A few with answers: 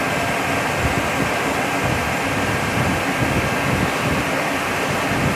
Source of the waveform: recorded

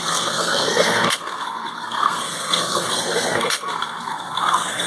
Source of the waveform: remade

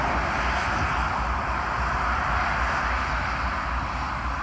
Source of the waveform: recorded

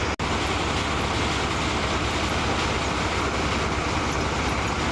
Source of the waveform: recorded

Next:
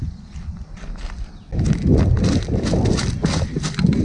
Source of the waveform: recorded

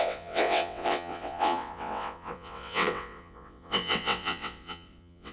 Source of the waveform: remade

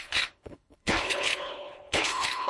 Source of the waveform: remade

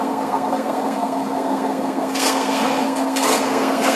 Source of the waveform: remade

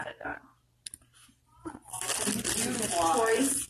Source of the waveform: recorded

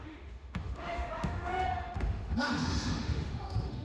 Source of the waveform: remade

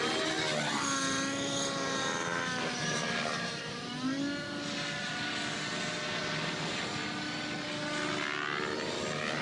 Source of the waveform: recorded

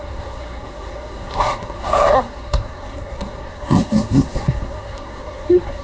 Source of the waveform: remade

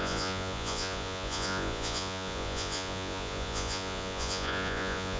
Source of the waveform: remade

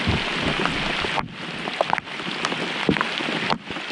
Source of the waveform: recorded